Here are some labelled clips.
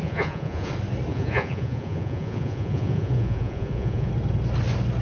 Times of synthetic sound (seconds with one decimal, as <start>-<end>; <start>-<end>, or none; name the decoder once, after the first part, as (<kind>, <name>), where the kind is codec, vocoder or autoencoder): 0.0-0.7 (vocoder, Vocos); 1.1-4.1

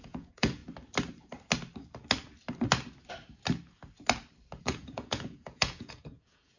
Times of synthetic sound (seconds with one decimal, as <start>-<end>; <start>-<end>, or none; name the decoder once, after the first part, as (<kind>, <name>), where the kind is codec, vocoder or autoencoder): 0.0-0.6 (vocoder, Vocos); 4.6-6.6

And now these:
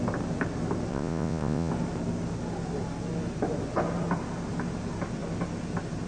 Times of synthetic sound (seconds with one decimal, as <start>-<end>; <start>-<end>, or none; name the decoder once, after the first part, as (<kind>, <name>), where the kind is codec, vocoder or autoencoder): 0.9-1.7 (vocoder, Vocos)